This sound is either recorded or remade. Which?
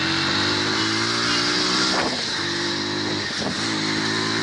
recorded